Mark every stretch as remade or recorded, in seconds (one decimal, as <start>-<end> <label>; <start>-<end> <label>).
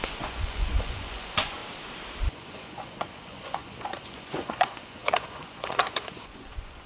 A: 0.0-1.6 remade; 1.6-2.3 recorded; 2.3-6.9 remade